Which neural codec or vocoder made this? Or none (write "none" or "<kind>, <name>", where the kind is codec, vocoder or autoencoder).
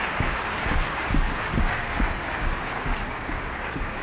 codec, DAC